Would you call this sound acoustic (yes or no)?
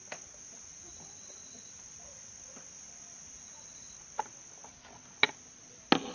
yes